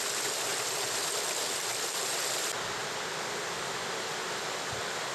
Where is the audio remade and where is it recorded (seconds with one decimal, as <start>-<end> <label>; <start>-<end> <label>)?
0.0-5.1 recorded